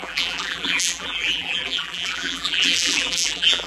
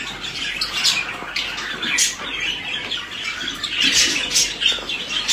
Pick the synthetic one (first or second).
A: first